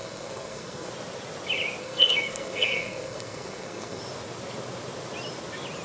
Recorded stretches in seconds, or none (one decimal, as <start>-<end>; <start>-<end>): 0.9-1.8; 4.0-5.8